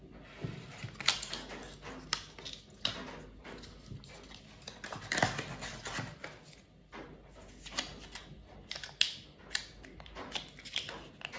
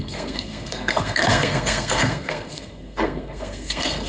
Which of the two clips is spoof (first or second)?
second